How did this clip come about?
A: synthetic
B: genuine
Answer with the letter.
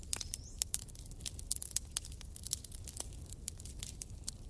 B